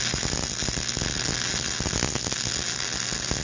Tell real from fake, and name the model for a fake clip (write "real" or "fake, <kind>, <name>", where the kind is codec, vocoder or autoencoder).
real